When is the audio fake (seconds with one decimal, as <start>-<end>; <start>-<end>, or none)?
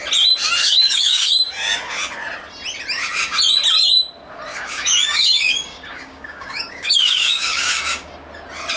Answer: 0.6-1.3; 4.5-8.1